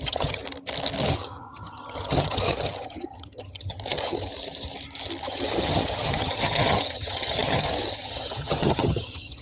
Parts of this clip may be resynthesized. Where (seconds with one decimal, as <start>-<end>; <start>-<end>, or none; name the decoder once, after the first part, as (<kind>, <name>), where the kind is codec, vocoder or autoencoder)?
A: 0.0-0.4 (vocoder, HiFi-GAN); 1.1-4.3; 5.2-9.4